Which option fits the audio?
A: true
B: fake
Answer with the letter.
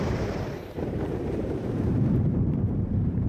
B